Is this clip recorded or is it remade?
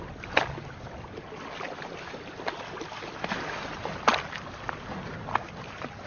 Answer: recorded